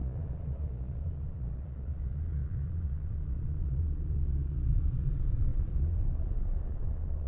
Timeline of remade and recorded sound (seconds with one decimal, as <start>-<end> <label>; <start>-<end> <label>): 0.0-7.3 remade